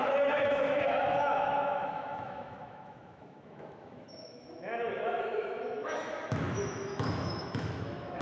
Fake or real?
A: fake